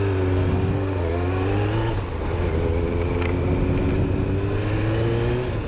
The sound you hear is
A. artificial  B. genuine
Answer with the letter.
B